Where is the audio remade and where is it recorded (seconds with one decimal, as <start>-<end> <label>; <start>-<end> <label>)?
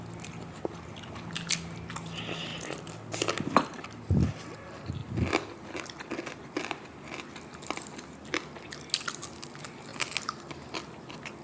0.0-11.4 recorded